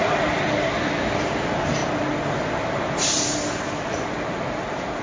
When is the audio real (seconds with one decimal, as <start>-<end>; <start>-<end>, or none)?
0.0-5.0